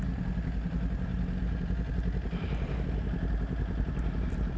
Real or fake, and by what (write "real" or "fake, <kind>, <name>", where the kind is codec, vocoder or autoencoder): real